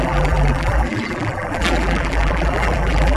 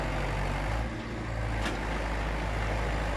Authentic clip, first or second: second